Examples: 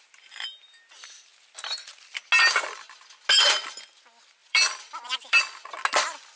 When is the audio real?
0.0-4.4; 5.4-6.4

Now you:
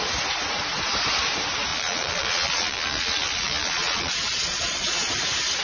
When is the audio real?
0.0-1.7; 5.1-5.6